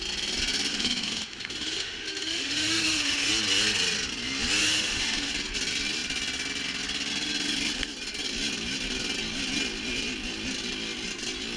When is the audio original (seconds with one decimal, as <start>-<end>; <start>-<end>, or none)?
0.0-0.7; 3.3-4.6; 5.3-11.6

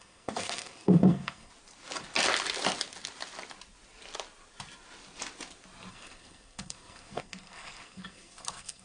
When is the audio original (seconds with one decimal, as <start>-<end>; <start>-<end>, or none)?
1.5-5.9

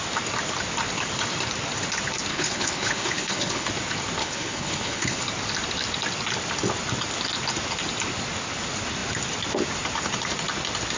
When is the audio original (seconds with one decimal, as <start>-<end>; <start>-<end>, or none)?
0.0-2.3; 3.7-4.2; 5.2-11.0

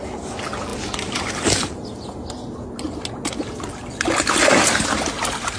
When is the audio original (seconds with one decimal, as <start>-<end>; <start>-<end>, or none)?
0.0-5.6